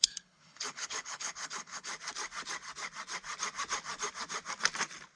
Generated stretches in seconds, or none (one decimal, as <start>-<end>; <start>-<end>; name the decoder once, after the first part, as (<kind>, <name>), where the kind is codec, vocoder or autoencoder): 0.0-1.9 (codec, HILCodec)